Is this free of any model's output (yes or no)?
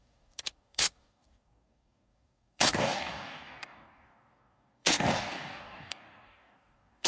no